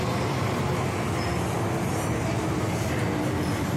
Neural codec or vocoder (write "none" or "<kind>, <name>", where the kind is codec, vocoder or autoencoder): none